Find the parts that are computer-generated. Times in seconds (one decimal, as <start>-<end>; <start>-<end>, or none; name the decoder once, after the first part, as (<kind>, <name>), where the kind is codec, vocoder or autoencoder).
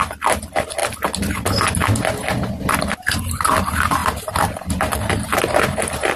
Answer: 0.0-0.8 (vocoder, BigVGAN v2); 3.2-6.2